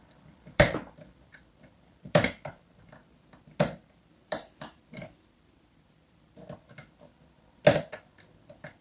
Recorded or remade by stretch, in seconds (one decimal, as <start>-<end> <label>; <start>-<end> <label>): 0.0-3.0 remade; 3.0-4.0 recorded; 4.0-6.8 remade; 6.8-8.3 recorded; 8.3-8.8 remade

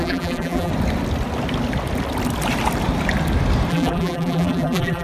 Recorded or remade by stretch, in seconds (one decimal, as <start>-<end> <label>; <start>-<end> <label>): 0.0-0.7 remade; 0.7-3.7 recorded; 3.7-5.0 remade

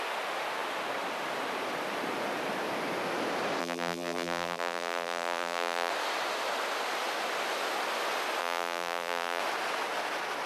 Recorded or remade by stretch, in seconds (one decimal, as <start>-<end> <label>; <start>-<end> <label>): 0.0-3.6 recorded; 3.6-5.9 remade; 5.9-8.4 recorded; 8.4-9.4 remade; 9.4-10.5 recorded

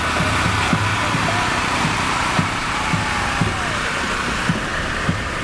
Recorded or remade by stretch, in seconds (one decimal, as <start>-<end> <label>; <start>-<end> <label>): 0.0-0.9 recorded; 0.9-3.0 remade; 3.0-4.7 recorded; 4.7-5.4 remade

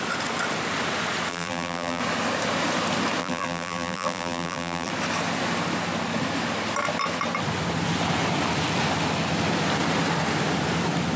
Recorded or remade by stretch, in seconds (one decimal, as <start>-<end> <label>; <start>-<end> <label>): 0.0-1.3 recorded; 1.3-2.0 remade; 2.0-3.2 recorded; 3.2-4.9 remade; 4.9-11.2 recorded